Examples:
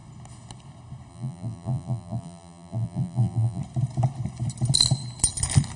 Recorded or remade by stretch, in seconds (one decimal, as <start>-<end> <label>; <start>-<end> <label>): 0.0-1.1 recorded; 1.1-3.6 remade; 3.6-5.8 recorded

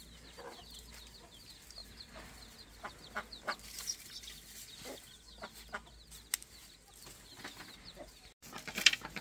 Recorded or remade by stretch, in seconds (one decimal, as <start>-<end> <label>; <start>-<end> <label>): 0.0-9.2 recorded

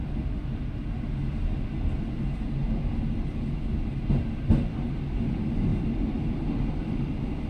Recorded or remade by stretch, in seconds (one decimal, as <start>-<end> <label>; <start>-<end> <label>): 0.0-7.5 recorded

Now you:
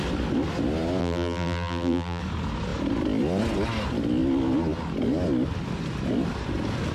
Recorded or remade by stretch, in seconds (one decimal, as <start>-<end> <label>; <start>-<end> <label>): 0.0-1.0 recorded; 1.0-2.2 remade; 2.2-6.9 recorded

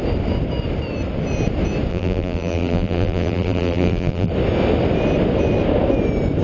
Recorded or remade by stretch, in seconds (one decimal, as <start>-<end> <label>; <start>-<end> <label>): 0.0-1.9 recorded; 1.9-4.3 remade; 4.3-6.4 recorded

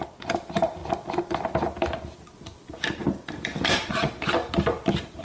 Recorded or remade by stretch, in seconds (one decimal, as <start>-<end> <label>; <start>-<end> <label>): 0.0-0.8 remade; 0.8-3.9 recorded; 3.9-4.4 remade; 4.4-5.2 recorded

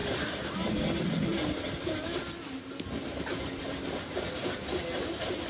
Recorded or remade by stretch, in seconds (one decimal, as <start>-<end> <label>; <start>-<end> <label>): 0.0-0.7 remade; 0.7-1.3 recorded; 1.3-2.2 remade; 2.2-3.0 recorded; 3.0-4.6 remade; 4.6-5.5 recorded

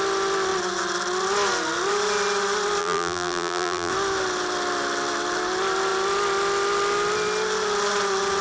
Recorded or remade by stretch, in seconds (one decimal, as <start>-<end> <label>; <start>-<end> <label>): 0.0-2.8 recorded; 2.8-3.9 remade; 3.9-8.4 recorded